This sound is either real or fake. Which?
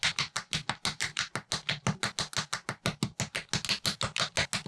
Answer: real